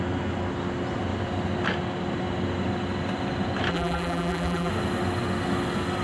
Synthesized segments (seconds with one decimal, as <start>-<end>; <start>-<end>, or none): 3.7-4.7